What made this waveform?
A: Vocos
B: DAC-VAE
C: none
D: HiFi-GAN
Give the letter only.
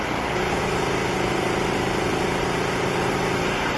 C